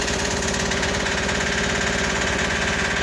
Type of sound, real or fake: fake